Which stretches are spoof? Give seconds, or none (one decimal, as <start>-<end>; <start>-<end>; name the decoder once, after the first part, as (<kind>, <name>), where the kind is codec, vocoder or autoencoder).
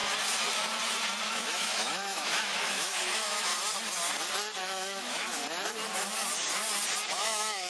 1.2-3.5 (autoencoder, DAC-VAE); 4.6-5.4; 7.1-7.7